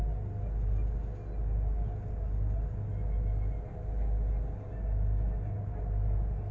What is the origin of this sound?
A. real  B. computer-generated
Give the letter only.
A